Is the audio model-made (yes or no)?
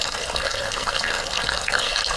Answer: yes